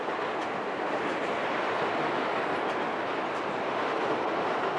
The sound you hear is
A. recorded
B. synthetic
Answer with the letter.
A